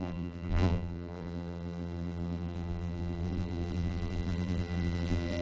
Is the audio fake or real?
fake